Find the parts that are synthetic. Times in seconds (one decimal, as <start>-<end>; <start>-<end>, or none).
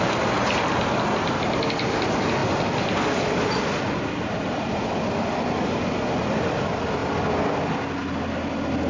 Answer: none